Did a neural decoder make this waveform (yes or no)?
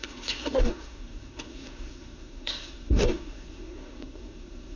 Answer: yes